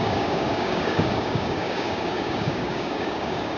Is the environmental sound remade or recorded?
remade